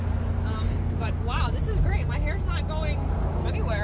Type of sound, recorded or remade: recorded